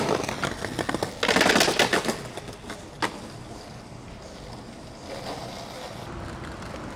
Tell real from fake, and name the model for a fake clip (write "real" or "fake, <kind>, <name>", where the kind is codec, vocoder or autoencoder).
real